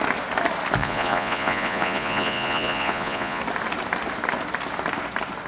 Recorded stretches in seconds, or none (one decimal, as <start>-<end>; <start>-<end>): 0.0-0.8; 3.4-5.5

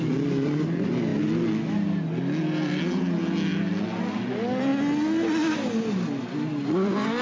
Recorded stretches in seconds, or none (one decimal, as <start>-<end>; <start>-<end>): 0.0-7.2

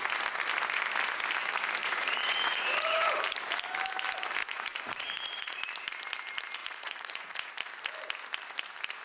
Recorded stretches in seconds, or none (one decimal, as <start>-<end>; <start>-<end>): 0.0-1.8; 3.2-4.4; 5.6-6.6; 7.5-9.0